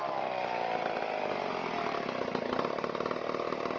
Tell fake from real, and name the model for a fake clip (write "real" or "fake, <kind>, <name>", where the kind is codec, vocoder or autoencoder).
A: real